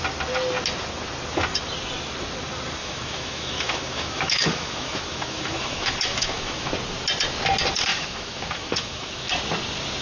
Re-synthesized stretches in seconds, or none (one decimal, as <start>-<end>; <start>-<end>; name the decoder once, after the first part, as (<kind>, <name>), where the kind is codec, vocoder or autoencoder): 2.8-6.7 (autoencoder, DAC-VAE); 7.9-9.3

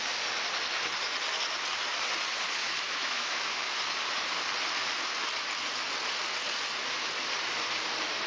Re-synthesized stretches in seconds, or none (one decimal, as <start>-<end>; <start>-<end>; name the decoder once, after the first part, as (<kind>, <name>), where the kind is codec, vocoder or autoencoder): 2.6-3.8 (autoencoder, DAC-VAE)

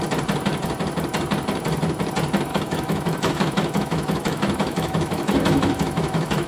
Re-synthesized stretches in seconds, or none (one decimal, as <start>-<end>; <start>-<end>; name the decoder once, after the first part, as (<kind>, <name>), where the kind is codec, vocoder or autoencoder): 2.5-6.5 (autoencoder, DAC-VAE)